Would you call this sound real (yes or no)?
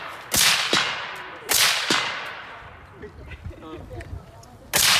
yes